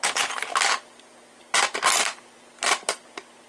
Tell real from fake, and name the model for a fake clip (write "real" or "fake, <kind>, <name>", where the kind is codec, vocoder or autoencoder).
real